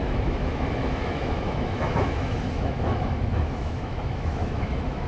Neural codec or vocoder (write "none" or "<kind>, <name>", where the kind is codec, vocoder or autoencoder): autoencoder, DAC-VAE